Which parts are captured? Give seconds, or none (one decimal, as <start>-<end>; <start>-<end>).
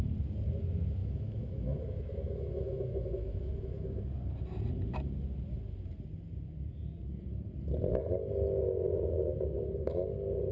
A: 0.0-1.0; 4.0-10.5